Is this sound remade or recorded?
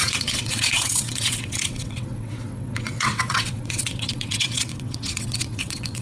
remade